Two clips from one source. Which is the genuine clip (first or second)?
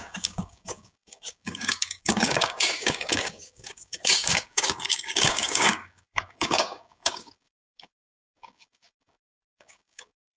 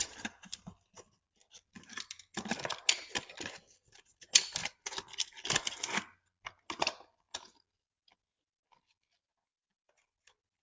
second